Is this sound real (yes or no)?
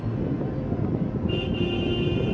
yes